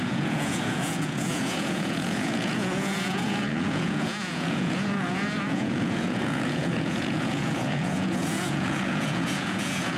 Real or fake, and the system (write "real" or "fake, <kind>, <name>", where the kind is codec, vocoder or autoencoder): fake, vocoder, Vocos